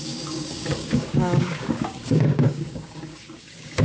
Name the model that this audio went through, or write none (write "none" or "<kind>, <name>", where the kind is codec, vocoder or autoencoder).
codec, DAC